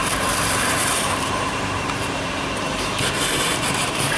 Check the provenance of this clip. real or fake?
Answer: fake